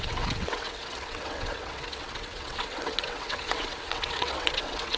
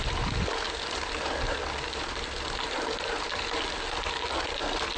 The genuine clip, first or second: second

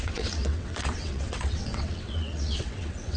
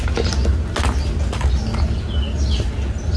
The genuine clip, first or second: second